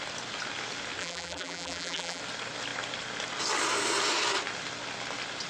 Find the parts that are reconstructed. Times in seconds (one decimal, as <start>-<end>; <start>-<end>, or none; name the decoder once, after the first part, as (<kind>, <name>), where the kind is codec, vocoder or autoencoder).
1.0-2.2 (vocoder, BigVGAN v2)